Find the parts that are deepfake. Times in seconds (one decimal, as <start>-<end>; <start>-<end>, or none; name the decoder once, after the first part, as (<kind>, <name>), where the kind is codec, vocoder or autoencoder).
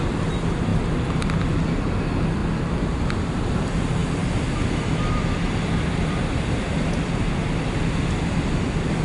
none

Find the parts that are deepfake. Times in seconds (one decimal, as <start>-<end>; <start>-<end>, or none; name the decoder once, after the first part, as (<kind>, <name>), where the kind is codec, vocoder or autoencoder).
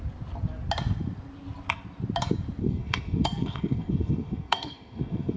2.6-5.4 (codec, SNAC)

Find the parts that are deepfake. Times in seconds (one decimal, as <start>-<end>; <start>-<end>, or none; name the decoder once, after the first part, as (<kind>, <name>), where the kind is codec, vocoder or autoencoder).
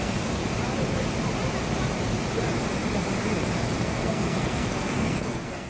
0.0-0.4 (codec, SNAC); 3.8-5.7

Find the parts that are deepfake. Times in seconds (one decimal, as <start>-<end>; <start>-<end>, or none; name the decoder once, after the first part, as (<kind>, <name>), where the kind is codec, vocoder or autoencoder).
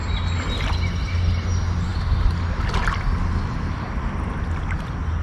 none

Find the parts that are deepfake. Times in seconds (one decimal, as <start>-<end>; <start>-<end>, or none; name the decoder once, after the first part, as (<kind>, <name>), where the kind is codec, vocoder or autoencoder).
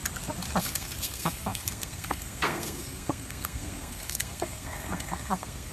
0.6-5.7 (codec, SNAC)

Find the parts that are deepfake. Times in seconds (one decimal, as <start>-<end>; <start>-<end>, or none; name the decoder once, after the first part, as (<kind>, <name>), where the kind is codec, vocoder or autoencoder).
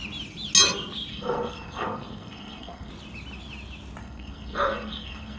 1.1-2.9 (codec, SNAC); 4.0-5.4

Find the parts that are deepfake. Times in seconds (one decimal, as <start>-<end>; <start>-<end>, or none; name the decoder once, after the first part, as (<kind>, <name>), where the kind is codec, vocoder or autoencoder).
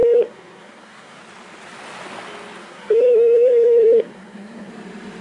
0.0-1.2 (codec, SNAC); 2.6-4.7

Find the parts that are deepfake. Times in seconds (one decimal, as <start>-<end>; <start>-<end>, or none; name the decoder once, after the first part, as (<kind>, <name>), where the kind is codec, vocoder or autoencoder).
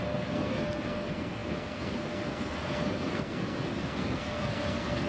0.0-5.1 (codec, SNAC)